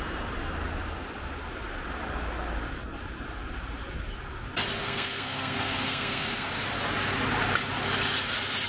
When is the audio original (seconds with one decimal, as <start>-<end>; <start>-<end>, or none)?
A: 0.0-4.8; 6.5-8.7